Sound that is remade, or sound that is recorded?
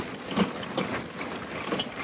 recorded